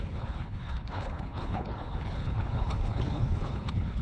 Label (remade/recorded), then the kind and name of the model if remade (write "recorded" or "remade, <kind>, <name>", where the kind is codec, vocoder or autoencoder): remade, codec, HILCodec